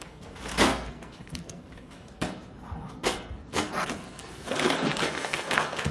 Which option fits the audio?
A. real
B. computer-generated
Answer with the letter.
B